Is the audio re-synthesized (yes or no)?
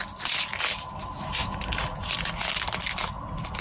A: no